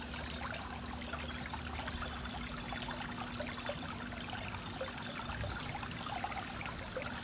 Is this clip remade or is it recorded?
recorded